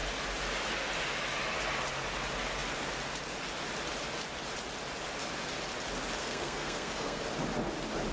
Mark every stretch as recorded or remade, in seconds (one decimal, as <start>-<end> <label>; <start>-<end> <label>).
0.0-6.2 recorded; 6.2-7.2 remade; 7.2-8.1 recorded